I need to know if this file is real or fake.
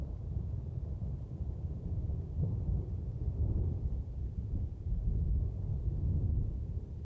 real